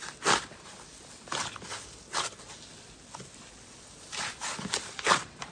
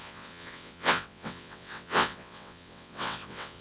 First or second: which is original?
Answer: first